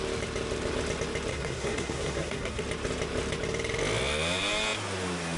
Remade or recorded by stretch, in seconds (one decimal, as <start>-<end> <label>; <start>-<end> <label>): 0.0-1.3 recorded; 1.3-2.6 remade; 2.6-5.4 recorded